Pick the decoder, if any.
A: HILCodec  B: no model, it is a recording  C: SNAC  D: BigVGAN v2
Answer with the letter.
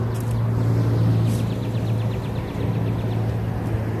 B